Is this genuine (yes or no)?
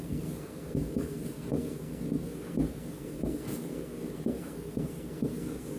no